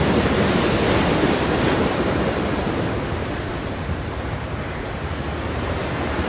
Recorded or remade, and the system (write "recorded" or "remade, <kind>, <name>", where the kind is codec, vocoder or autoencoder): remade, vocoder, BigVGAN v2